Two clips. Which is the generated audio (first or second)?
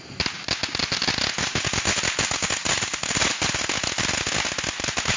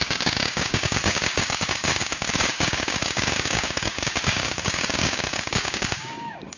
second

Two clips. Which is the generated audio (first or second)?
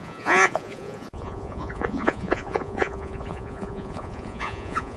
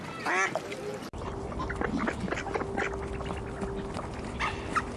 first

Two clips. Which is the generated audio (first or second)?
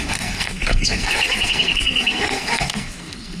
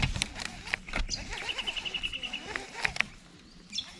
first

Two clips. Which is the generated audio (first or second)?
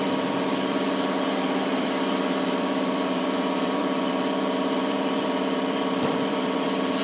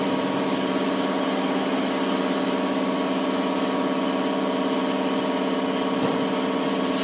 first